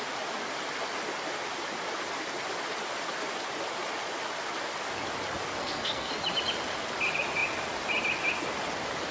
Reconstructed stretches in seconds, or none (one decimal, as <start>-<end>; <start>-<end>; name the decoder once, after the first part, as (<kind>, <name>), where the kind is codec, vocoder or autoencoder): 5.6-6.1 (codec, SNAC)